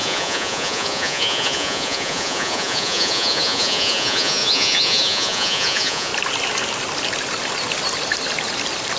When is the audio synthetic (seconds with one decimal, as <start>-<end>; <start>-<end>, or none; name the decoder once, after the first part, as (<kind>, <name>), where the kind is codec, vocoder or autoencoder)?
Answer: 0.0-6.1 (vocoder, Vocos)